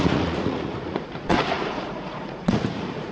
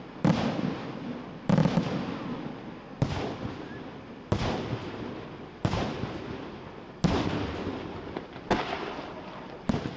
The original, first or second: second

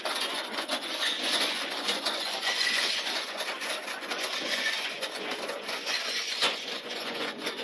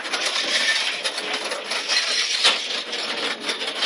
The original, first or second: second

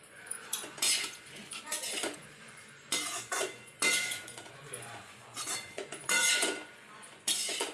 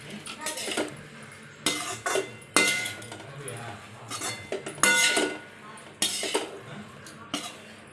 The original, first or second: second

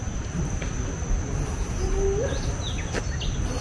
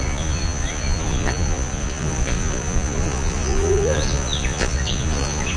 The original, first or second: first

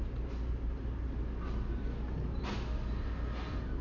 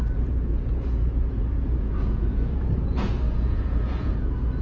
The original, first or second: first